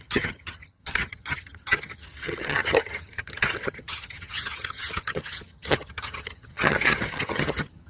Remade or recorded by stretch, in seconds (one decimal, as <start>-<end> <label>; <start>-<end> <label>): 0.0-7.9 remade